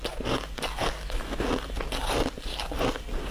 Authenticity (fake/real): real